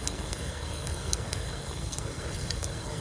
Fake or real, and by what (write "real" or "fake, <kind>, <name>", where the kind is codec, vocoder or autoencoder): fake, codec, SNAC